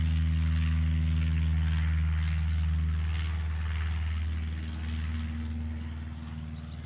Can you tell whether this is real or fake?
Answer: real